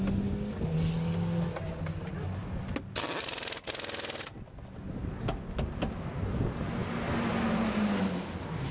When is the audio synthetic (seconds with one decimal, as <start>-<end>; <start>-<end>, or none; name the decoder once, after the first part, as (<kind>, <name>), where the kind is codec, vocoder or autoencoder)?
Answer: none

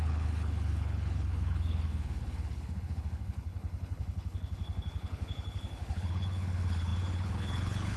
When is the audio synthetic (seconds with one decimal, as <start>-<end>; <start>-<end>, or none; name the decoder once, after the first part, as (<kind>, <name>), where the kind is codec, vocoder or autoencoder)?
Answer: 0.0-8.0 (codec, HILCodec)

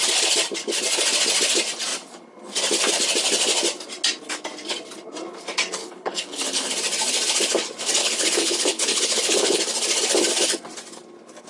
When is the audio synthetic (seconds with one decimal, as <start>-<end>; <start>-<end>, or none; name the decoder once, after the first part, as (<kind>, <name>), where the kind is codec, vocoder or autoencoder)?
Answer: 5.8-6.7 (codec, HILCodec); 8.0-9.6

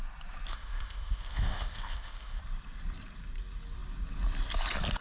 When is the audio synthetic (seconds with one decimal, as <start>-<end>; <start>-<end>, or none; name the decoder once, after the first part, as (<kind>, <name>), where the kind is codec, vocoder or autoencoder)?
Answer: 0.5-2.4 (codec, ZipCodec)

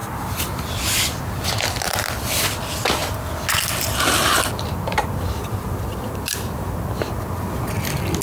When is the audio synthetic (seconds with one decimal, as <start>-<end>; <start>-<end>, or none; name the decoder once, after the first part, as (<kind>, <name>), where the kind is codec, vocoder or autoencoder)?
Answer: none

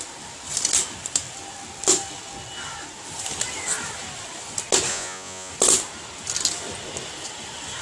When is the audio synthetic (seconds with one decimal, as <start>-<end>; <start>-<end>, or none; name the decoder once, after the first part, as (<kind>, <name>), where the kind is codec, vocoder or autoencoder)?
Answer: 4.9-5.5 (vocoder, Vocos)

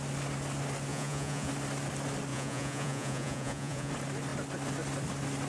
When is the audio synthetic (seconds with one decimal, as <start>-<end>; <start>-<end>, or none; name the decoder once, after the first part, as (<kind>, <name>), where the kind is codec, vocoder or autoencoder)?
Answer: 0.9-1.5 (vocoder, Vocos); 2.3-3.9

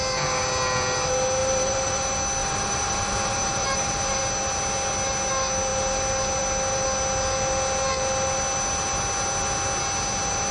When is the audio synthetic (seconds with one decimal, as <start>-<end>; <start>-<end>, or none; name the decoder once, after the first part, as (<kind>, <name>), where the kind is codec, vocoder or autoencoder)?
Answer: 1.4-2.0 (vocoder, BigVGAN v2); 2.4-4.2